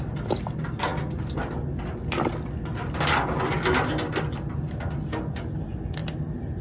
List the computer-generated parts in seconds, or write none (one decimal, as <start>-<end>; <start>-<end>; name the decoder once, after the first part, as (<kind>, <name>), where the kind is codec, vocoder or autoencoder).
none